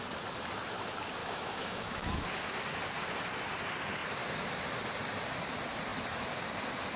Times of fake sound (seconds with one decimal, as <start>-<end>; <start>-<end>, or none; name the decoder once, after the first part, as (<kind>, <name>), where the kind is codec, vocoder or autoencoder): 1.2-2.2 (autoencoder, DAC-VAE)